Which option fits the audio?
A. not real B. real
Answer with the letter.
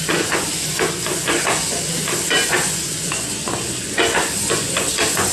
A